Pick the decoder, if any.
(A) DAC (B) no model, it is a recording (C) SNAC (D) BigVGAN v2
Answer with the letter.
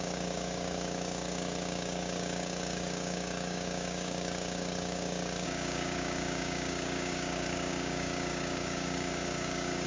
A